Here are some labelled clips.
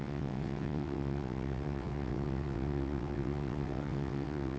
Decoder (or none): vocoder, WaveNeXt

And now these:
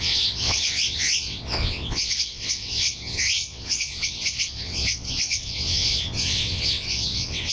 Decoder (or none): vocoder, WaveNeXt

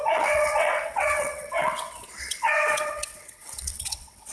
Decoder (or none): vocoder, WaveNeXt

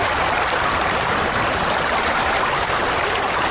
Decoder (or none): none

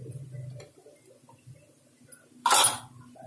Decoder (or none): none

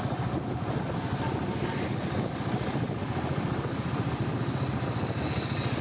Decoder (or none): none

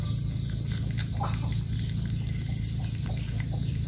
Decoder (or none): none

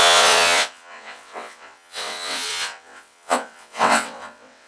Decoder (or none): vocoder, WaveNeXt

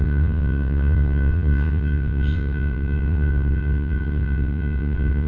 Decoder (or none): vocoder, WaveNeXt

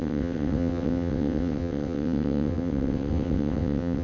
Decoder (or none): vocoder, WaveNeXt